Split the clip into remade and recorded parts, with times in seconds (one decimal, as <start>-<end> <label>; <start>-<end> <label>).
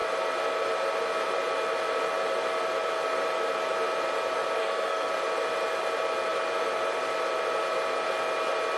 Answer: 0.0-4.6 recorded; 4.6-5.1 remade; 5.1-8.8 recorded